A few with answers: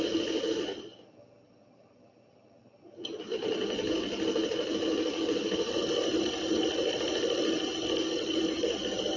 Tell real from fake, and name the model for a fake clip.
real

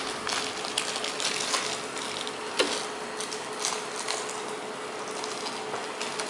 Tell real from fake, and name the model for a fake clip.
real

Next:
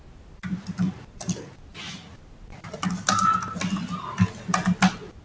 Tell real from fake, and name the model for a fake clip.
real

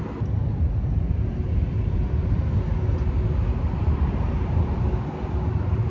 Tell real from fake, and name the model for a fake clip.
real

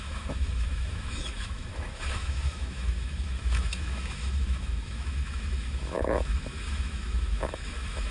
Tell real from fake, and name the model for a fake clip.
fake, autoencoder, DAC-VAE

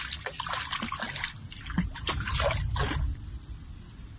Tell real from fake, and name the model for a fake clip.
real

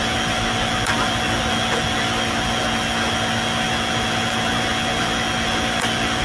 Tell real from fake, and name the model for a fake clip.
real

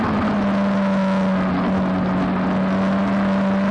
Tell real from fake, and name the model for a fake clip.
real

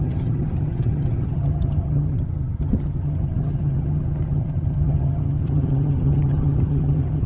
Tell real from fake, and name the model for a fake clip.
fake, vocoder, HiFi-GAN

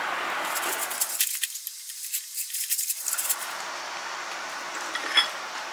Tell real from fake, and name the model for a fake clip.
real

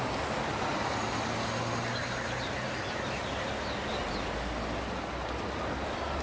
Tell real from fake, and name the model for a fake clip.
real